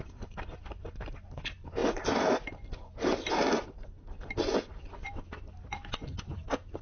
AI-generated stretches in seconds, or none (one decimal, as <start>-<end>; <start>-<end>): none